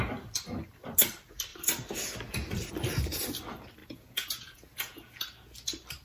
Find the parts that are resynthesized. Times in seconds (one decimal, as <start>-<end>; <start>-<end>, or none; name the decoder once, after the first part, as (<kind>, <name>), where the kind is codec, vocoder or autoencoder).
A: 3.8-5.1 (vocoder, Vocos)